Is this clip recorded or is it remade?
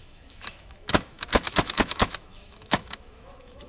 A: remade